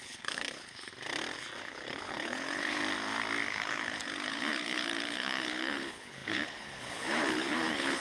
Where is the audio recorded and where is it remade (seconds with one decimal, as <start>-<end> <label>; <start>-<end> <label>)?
0.0-0.9 remade; 0.9-1.6 recorded; 1.6-2.8 remade; 2.8-3.5 recorded; 3.5-8.0 remade